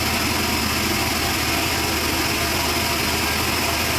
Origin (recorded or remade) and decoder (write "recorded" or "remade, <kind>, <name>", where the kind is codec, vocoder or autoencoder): recorded